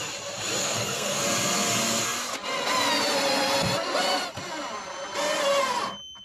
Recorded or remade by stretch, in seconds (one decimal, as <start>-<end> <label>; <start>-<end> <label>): 0.0-0.6 recorded; 0.6-1.2 remade; 1.2-6.2 recorded